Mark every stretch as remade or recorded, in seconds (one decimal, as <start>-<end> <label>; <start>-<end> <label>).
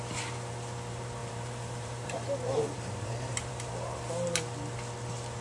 0.0-1.2 recorded; 1.2-3.7 remade; 3.7-5.4 recorded